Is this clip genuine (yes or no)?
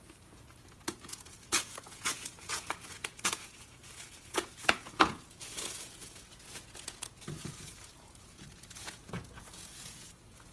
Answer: no